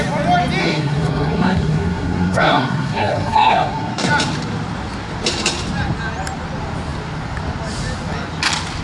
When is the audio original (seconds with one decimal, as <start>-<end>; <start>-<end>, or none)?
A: 0.0-0.6; 4.1-8.8